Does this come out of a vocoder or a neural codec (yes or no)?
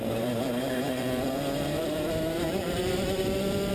yes